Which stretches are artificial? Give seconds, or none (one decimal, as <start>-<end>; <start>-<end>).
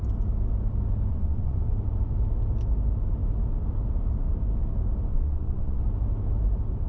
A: 1.1-1.7; 5.1-5.8